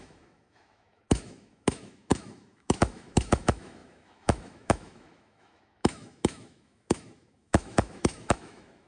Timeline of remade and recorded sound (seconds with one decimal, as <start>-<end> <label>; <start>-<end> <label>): 0.0-8.9 remade